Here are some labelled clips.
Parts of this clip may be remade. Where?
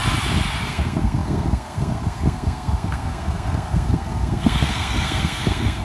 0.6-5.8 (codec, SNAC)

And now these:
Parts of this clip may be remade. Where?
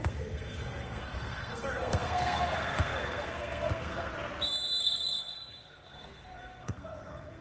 0.0-4.1 (codec, SNAC); 4.8-7.4